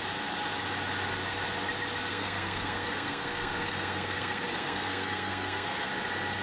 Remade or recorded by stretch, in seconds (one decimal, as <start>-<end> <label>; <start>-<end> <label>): 0.0-2.1 recorded; 2.1-5.9 remade; 5.9-6.4 recorded